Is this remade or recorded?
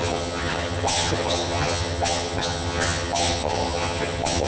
remade